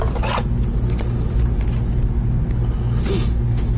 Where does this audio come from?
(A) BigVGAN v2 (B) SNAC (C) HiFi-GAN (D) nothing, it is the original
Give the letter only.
D